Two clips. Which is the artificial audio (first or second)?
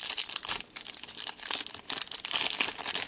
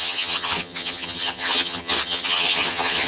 second